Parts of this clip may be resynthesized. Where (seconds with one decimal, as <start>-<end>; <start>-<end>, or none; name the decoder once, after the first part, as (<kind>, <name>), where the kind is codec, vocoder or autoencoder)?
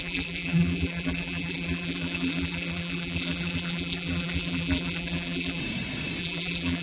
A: 0.0-5.6 (vocoder, BigVGAN v2); 6.2-6.8